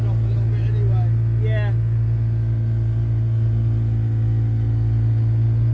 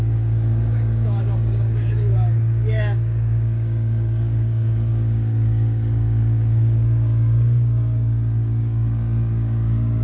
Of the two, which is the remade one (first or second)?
second